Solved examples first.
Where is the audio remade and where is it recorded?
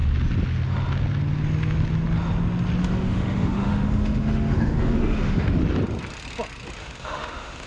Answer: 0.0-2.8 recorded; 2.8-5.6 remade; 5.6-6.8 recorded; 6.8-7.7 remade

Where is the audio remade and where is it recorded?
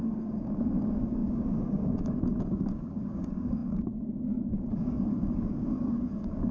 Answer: 0.0-6.5 remade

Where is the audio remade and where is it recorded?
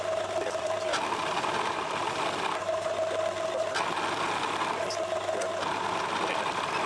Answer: 0.0-2.0 remade; 2.0-6.1 recorded; 6.1-6.9 remade